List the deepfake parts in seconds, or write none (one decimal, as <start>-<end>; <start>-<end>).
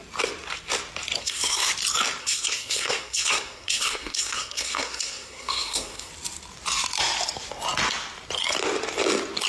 1.2-1.7; 2.2-6.1